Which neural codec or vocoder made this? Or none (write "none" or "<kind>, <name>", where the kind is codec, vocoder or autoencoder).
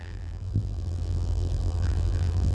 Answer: vocoder, BigVGAN v2